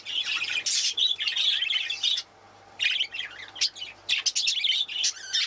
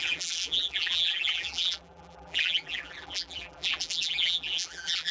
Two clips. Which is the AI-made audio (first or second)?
second